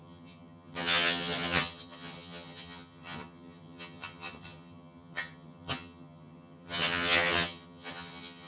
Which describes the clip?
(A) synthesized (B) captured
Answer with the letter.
A